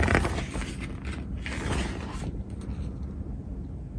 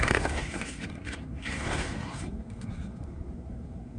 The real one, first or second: first